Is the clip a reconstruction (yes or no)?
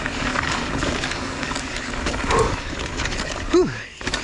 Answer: yes